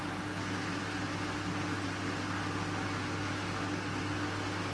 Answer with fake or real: real